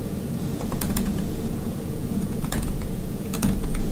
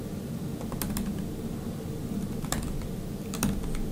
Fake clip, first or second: first